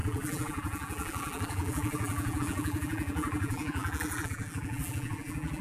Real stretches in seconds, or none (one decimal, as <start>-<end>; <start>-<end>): none